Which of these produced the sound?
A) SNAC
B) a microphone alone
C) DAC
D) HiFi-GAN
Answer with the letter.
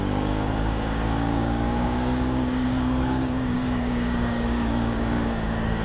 C